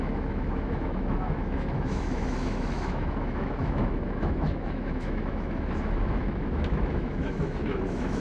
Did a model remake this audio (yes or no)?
yes